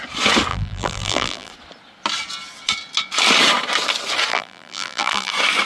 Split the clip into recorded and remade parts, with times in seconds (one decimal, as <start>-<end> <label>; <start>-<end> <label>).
0.0-0.5 recorded; 0.5-1.5 remade; 1.5-4.3 recorded; 4.3-5.3 remade; 5.3-5.7 recorded

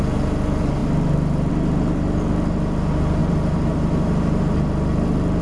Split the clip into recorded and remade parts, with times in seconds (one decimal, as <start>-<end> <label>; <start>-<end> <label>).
0.0-3.2 recorded; 3.2-4.4 remade; 4.4-5.4 recorded